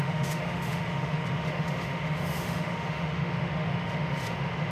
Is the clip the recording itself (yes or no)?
no